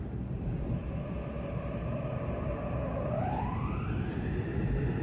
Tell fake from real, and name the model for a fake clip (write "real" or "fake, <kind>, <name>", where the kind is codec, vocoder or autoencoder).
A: real